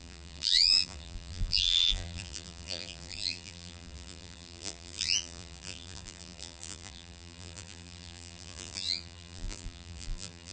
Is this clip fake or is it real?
fake